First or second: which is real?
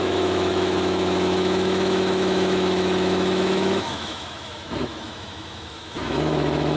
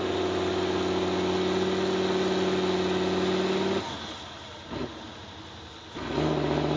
second